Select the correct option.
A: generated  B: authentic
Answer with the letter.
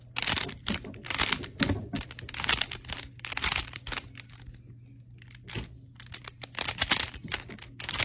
B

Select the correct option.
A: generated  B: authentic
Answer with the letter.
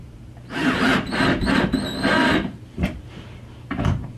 A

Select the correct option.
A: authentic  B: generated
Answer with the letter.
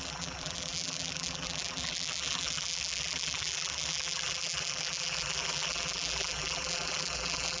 B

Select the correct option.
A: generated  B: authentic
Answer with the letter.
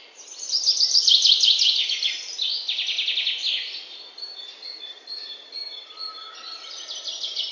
A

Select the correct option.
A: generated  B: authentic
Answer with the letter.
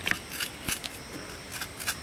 B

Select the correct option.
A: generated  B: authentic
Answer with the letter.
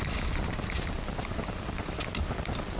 A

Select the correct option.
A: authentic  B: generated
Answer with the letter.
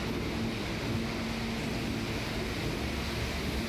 A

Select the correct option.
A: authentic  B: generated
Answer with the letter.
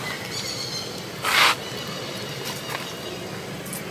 A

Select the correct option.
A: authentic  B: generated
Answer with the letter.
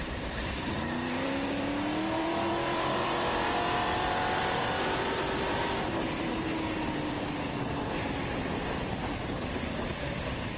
B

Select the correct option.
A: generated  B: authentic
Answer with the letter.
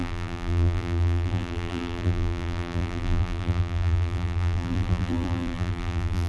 A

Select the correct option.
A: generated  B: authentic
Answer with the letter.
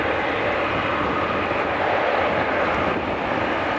B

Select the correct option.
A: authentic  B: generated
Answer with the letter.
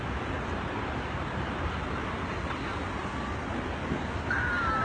A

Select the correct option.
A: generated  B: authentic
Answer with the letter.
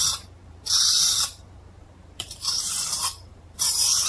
A